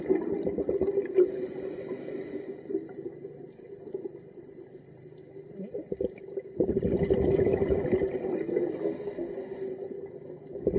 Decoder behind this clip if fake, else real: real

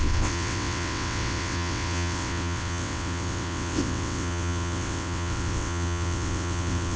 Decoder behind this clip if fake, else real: fake, vocoder, WaveNeXt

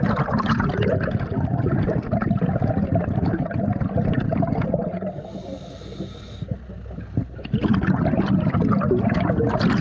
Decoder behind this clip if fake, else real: real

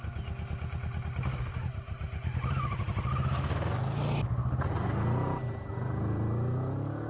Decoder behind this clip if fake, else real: real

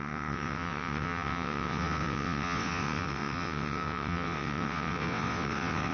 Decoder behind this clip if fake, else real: fake, vocoder, WaveNeXt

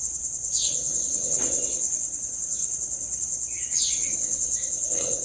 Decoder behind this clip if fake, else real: fake, vocoder, WaveNeXt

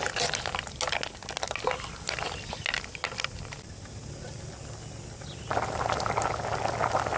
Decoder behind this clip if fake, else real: real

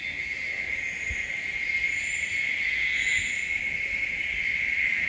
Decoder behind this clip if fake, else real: real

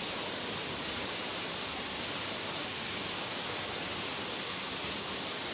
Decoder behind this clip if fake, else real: real